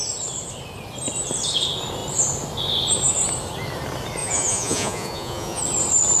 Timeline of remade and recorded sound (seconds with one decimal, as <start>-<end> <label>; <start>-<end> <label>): 0.0-4.2 recorded; 4.2-5.6 remade; 5.6-6.2 recorded